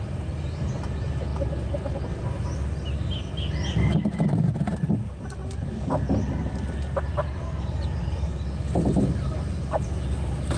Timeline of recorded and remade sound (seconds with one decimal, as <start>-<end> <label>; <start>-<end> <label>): 0.0-1.3 remade; 1.3-4.4 recorded; 4.4-5.4 remade; 5.4-7.0 recorded; 7.0-8.3 remade; 8.3-9.0 recorded; 9.0-10.6 remade